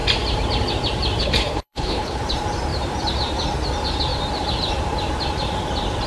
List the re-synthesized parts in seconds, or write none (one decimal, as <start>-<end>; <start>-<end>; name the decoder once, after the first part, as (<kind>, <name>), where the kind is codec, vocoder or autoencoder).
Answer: 1.2-2.2 (codec, HILCodec)